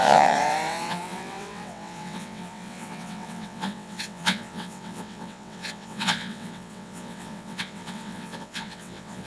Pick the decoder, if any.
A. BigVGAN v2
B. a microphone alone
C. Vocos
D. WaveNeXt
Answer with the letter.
D